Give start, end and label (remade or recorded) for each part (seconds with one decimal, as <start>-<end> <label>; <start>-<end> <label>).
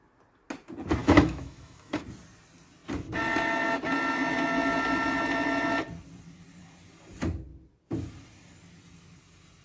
0.0-1.0 recorded; 1.0-2.0 remade; 2.0-9.6 recorded